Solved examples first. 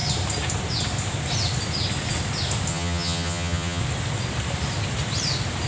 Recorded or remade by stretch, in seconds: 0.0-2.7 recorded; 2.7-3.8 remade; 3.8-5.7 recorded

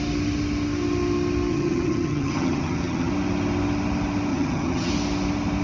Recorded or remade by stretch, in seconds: 0.0-1.5 recorded; 1.5-3.1 remade; 3.1-4.3 recorded; 4.3-4.9 remade; 4.9-5.6 recorded

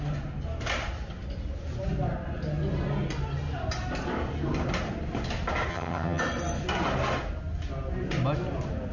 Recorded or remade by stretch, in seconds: 0.0-5.7 recorded; 5.7-6.2 remade; 6.2-8.9 recorded

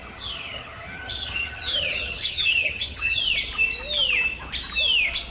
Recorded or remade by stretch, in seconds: 0.0-3.2 remade; 3.2-5.3 recorded

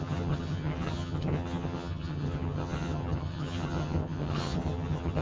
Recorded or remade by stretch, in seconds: 0.0-5.2 remade

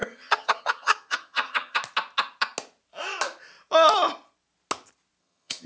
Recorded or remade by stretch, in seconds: 0.0-1.8 remade; 1.8-5.2 recorded; 5.2-5.7 remade

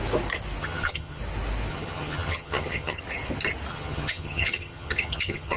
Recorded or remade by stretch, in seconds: 0.0-0.6 recorded; 0.6-1.2 remade; 1.2-1.7 recorded; 1.7-3.0 remade; 3.0-3.7 recorded; 3.7-5.6 remade